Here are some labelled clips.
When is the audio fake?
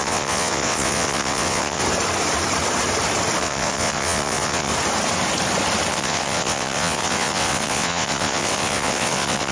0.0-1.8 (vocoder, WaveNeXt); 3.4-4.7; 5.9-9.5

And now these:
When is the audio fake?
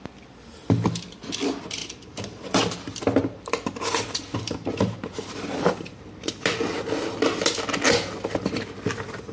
1.8-6.2 (vocoder, BigVGAN v2)